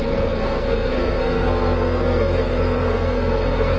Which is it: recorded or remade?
remade